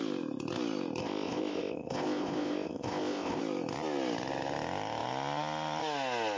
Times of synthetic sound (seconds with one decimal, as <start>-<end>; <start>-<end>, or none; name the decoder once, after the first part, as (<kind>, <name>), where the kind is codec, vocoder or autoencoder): 1.0-3.4 (codec, ZipCodec)